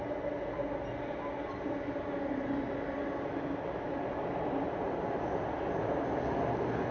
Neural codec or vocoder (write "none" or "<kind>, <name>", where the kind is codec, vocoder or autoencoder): none